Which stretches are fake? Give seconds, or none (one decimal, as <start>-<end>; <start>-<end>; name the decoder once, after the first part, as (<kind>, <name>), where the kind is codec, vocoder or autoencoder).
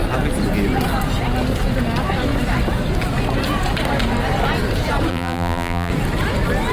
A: 5.1-5.9 (vocoder, BigVGAN v2)